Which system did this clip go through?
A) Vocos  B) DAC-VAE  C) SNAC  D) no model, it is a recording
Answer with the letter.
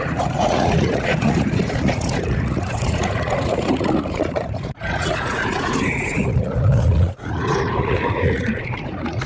A